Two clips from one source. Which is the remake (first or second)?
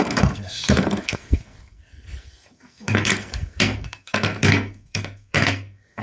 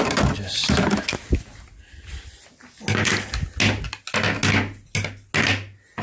first